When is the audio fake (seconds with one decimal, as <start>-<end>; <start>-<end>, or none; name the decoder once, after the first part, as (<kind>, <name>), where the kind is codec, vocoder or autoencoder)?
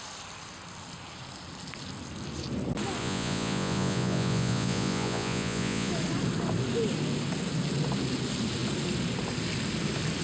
3.0-5.9 (vocoder, Vocos)